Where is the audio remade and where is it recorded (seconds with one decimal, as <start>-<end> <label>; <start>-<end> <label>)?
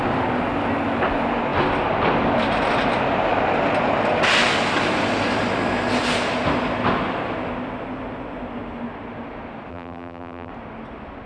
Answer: 0.0-9.7 recorded; 9.7-10.5 remade; 10.5-11.3 recorded